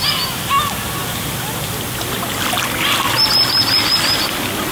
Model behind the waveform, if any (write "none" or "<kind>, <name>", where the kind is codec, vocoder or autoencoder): none